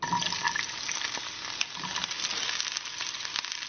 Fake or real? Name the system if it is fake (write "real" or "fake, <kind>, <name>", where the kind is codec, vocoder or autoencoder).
real